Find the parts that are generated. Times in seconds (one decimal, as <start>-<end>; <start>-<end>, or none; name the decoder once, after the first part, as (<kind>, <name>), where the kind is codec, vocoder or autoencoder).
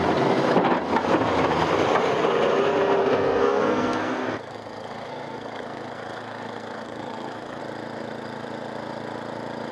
3.0-7.6 (codec, SNAC)